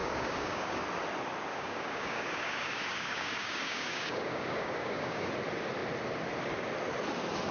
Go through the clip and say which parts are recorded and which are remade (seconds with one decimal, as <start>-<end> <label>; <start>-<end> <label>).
0.0-0.8 remade; 0.8-1.5 recorded; 1.5-5.3 remade; 5.3-7.5 recorded